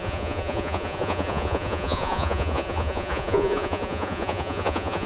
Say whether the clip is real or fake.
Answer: fake